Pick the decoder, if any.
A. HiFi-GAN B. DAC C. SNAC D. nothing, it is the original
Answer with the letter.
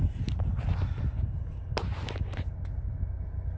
D